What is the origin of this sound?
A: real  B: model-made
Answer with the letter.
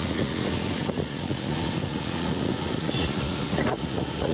B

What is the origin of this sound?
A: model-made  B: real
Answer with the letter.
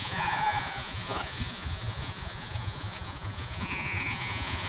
A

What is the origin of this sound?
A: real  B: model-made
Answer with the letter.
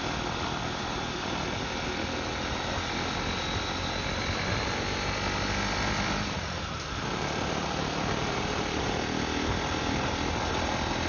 A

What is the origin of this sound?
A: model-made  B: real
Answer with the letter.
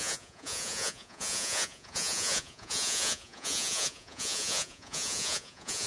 A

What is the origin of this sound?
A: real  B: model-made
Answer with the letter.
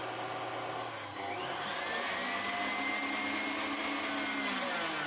A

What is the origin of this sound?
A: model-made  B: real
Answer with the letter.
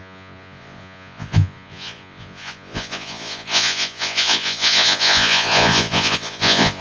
A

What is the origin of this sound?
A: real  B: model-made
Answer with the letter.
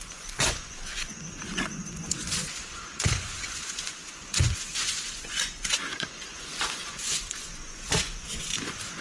B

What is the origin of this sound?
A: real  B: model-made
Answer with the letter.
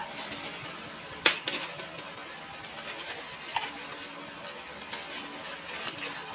A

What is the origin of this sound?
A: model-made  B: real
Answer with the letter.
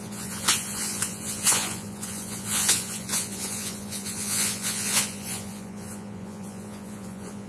A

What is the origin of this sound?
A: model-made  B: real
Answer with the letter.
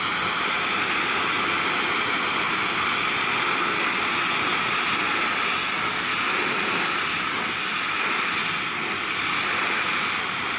B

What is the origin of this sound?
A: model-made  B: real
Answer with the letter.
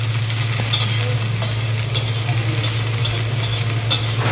B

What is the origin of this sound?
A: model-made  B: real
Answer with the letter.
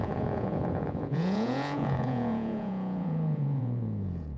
A